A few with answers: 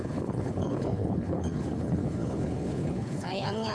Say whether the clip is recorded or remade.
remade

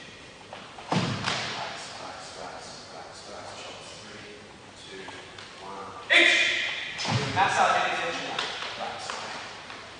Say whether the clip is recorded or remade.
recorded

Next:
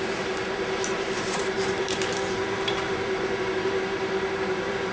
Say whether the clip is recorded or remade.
remade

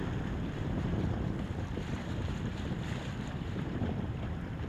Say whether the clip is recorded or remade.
remade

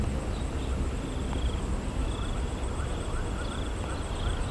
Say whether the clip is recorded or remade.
recorded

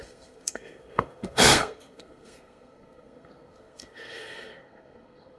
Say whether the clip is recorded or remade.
remade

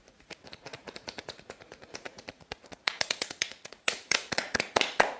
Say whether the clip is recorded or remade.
remade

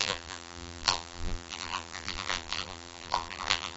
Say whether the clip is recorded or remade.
remade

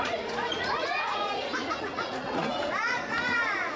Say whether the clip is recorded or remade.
remade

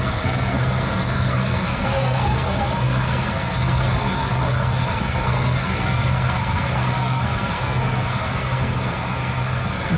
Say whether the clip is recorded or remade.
remade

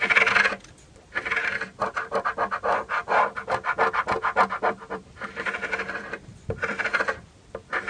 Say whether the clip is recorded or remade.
remade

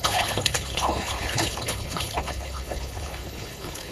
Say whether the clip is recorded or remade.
remade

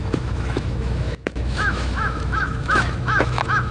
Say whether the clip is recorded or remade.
remade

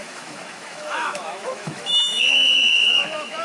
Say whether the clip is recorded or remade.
remade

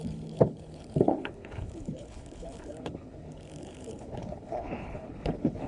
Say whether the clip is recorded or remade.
remade